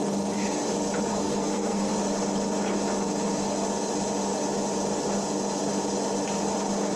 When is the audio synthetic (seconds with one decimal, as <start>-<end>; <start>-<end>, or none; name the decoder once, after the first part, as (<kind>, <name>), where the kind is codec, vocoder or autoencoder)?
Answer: 1.1-1.9 (codec, SNAC)